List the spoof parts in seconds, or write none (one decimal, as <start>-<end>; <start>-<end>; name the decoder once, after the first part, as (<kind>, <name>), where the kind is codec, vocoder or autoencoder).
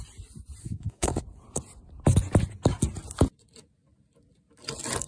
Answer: 0.6-1.2 (codec, DAC)